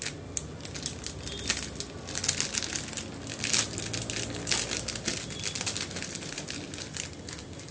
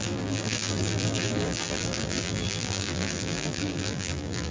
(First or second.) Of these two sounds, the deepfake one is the second